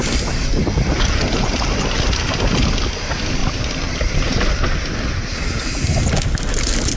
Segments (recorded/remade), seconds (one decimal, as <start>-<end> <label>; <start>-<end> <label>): 0.0-3.4 recorded; 3.4-4.5 remade; 4.5-7.0 recorded